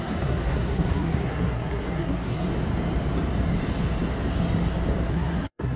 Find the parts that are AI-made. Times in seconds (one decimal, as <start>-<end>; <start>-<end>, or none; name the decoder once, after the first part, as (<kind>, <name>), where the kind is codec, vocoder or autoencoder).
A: 0.0-2.5 (codec, SNAC); 5.1-5.8